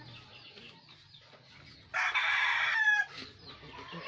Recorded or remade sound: recorded